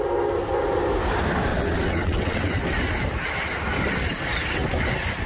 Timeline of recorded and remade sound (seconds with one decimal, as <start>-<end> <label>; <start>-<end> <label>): 0.0-1.5 recorded; 1.5-2.6 remade; 2.6-5.3 recorded